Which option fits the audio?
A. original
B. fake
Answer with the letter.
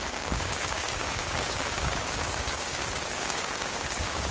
B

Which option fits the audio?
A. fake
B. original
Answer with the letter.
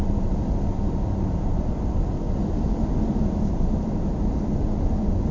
B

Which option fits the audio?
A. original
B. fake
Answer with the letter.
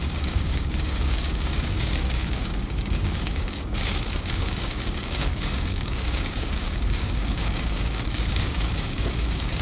B